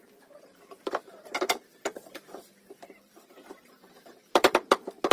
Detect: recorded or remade remade